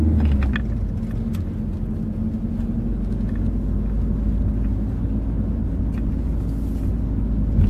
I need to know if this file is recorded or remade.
recorded